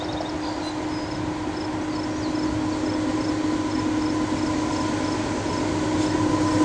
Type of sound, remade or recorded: recorded